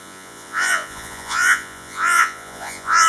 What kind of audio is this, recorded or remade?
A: remade